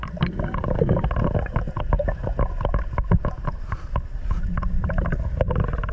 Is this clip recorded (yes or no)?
yes